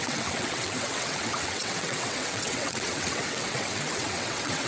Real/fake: fake